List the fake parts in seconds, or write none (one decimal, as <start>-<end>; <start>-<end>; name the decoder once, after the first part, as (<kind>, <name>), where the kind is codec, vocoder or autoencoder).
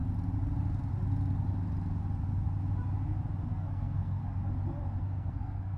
3.5-4.2 (codec, SNAC); 5.0-5.8